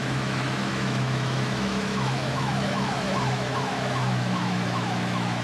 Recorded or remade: remade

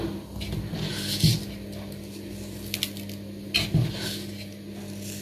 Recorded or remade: recorded